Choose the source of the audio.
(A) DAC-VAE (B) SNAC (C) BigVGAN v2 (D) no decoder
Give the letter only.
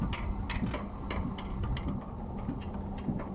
D